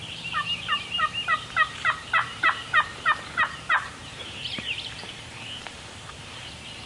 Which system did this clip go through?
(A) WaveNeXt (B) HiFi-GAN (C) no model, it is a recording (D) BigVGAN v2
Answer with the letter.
D